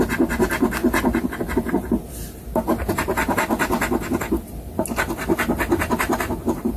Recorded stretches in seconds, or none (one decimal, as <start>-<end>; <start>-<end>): 0.0-6.8

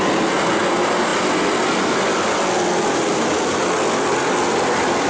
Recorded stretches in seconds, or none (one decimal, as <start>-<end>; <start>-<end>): 0.0-5.1

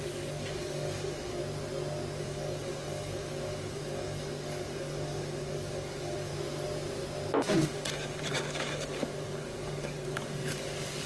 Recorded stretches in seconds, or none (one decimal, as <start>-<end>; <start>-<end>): 1.4-2.2; 6.3-7.4

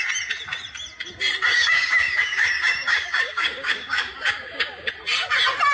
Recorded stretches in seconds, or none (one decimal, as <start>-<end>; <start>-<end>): 0.0-1.5; 4.9-5.7

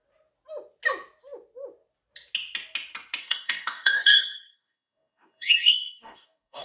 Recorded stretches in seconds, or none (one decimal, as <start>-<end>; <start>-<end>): 0.0-3.2

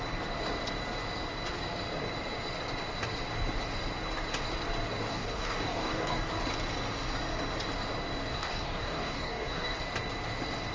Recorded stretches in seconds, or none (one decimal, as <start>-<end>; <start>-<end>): 0.0-5.1; 6.3-8.3; 9.8-10.7